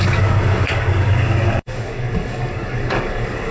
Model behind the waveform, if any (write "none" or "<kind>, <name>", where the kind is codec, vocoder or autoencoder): codec, DAC